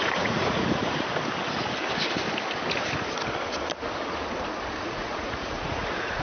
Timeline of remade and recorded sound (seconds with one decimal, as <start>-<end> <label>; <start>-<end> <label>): 0.0-1.1 remade; 1.1-4.8 recorded; 4.8-6.2 remade